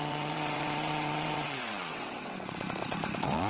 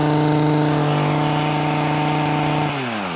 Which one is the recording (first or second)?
second